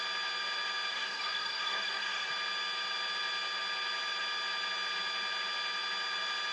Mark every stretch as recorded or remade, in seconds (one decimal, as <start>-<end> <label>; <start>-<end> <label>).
0.0-0.9 recorded; 0.9-2.3 remade; 2.3-6.5 recorded